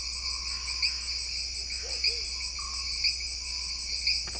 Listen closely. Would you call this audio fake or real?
real